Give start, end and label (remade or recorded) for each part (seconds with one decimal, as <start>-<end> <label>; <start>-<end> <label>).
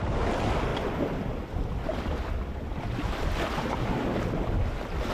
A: 0.0-0.7 recorded; 0.7-3.8 remade; 3.8-5.1 recorded